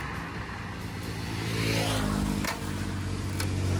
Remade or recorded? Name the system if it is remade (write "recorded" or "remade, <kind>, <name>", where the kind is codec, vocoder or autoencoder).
recorded